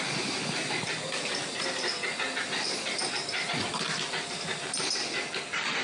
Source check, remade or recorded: recorded